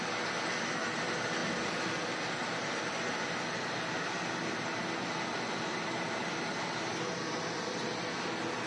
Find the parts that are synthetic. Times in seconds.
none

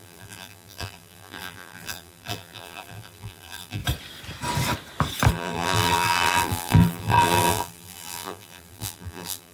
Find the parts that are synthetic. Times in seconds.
0.0-3.8; 5.3-9.5

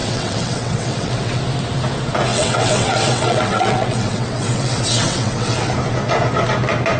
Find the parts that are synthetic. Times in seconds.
0.0-1.4; 2.3-5.7

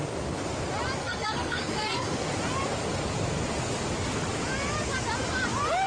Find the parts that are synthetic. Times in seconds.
1.0-2.3

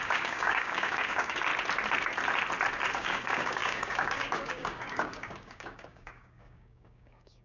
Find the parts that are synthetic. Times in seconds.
0.0-1.5; 2.9-7.4

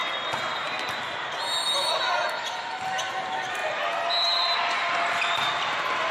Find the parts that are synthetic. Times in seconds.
none

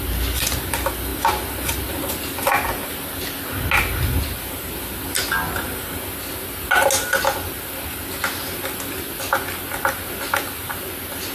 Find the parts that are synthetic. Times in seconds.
none

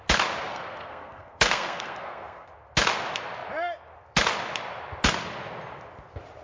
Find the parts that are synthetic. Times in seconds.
0.5-2.5